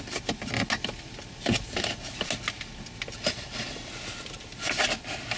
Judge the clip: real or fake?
real